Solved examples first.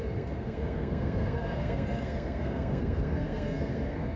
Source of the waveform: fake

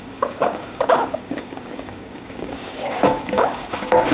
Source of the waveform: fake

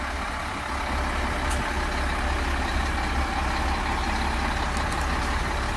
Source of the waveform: real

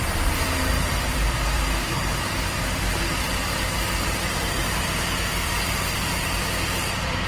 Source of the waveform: fake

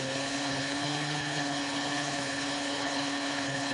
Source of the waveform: fake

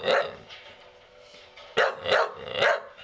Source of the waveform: real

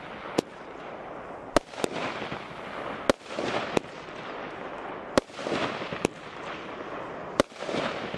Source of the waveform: real